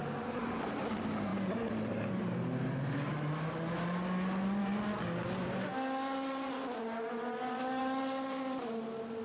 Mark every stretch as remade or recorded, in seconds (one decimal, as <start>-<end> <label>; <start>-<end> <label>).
0.0-9.2 recorded